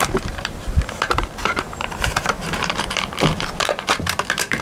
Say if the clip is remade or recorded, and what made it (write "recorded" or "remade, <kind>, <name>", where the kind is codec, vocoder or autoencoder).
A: remade, vocoder, BigVGAN v2